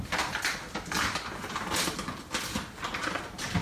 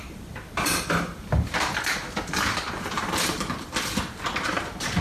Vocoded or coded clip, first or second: second